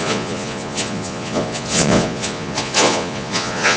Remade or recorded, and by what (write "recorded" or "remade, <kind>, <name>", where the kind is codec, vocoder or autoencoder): remade, vocoder, Vocos